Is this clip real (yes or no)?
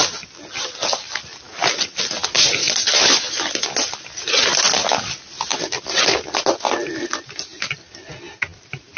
yes